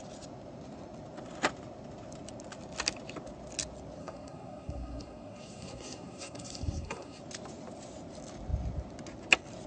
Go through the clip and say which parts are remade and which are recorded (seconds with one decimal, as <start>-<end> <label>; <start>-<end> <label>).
0.0-4.0 recorded; 4.0-7.2 remade; 7.2-9.7 recorded